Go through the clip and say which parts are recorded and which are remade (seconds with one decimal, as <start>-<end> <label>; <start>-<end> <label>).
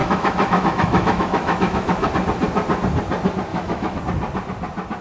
0.0-2.1 remade; 2.1-3.5 recorded; 3.5-4.0 remade; 4.0-5.0 recorded